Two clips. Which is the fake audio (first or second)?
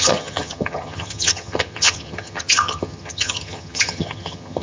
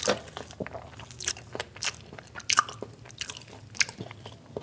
first